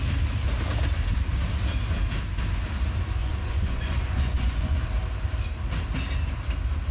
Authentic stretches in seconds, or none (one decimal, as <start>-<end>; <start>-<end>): 0.0-3.2; 4.8-6.9